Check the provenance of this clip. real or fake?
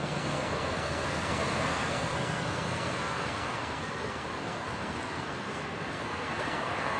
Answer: fake